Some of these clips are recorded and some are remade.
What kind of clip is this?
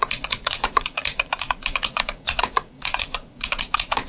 remade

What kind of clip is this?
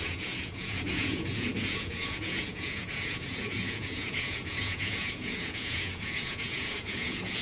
remade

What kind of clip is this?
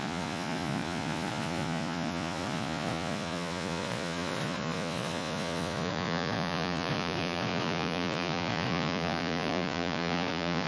remade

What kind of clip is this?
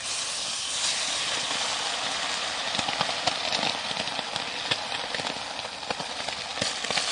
recorded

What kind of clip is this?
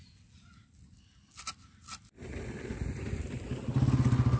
recorded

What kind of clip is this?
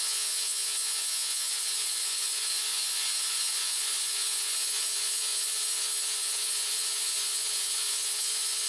remade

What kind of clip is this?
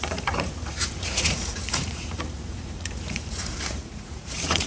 remade